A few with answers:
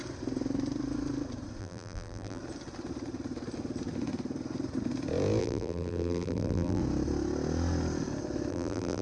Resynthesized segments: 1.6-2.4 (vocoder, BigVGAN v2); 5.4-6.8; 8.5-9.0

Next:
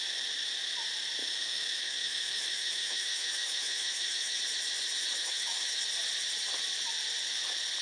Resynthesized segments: 1.2-4.4 (autoencoder, DAC-VAE); 5.2-5.8

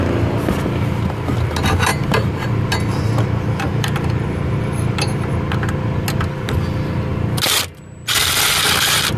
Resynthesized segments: 1.9-5.3 (vocoder, BigVGAN v2)

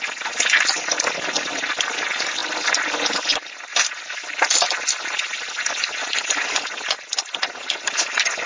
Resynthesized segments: none

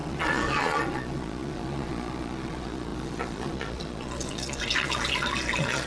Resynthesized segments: 0.0-5.9 (vocoder, Vocos)

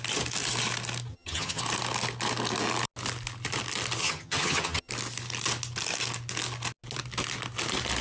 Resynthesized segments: 1.1-1.6 (vocoder, HiFi-GAN); 4.0-4.9

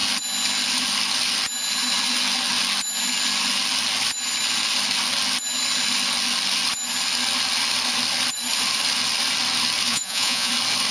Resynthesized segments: 9.9-10.5 (vocoder, Vocos)

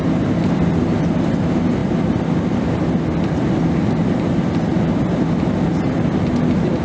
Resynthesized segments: none